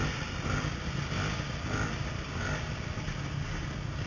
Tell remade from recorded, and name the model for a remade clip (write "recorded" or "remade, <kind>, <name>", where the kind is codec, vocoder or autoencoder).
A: recorded